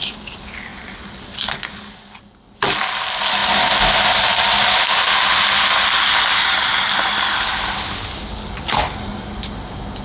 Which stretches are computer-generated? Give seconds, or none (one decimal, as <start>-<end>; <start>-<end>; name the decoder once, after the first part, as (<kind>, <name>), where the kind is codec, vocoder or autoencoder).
none